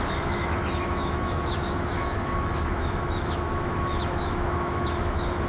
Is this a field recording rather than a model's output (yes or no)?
no